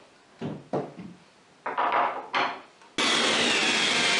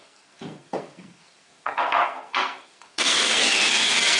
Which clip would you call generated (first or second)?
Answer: second